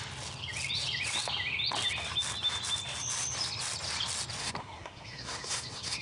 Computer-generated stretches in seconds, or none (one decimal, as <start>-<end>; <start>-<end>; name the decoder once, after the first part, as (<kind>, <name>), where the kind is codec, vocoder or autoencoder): 4.4-6.0 (codec, SNAC)